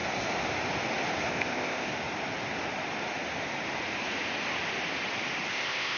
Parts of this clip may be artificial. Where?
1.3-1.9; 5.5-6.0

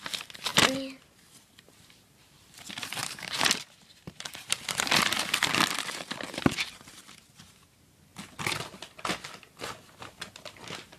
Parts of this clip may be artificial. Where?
0.0-8.1; 10.0-11.0

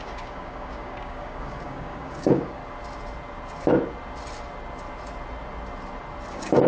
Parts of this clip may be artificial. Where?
0.0-2.6; 6.3-6.7

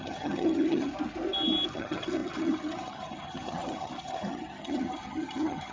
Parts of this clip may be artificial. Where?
0.0-0.9; 1.7-5.7

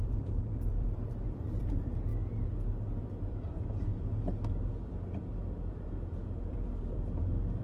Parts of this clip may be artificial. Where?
0.0-2.1; 3.3-3.9; 5.7-7.6

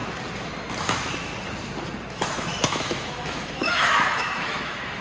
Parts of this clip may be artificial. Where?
0.8-1.3; 2.1-5.0